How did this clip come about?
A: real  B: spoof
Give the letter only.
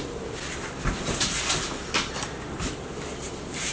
A